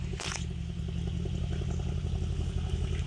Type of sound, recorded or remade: recorded